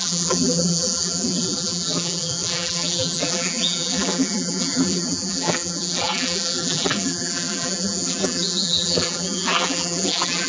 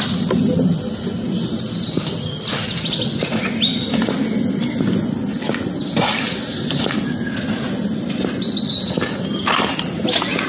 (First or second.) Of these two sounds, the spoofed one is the first